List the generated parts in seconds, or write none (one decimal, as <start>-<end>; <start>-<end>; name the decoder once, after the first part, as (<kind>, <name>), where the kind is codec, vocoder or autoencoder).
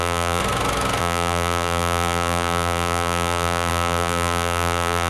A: 0.0-0.4 (vocoder, BigVGAN v2); 1.0-5.1